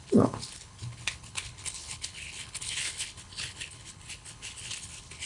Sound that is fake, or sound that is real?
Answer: fake